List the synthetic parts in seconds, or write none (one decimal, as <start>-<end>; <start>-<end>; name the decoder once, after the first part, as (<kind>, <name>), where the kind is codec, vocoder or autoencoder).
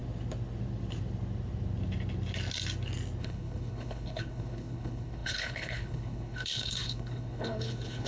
3.2-8.1 (codec, HILCodec)